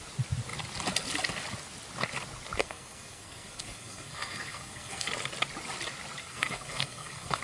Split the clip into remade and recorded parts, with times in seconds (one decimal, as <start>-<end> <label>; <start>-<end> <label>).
0.0-2.6 recorded; 2.6-5.1 remade; 5.1-6.2 recorded; 6.2-7.4 remade